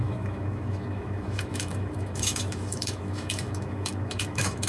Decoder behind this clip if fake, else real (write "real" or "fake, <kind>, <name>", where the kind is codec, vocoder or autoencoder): fake, autoencoder, DAC-VAE